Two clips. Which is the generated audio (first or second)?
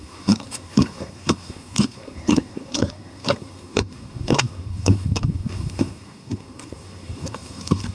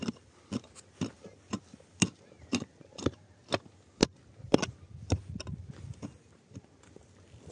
first